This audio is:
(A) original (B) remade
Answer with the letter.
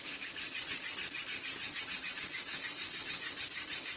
A